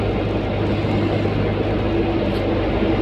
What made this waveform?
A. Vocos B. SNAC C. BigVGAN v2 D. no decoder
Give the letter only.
D